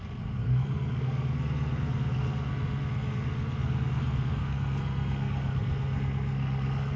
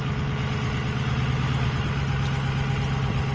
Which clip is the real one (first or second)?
second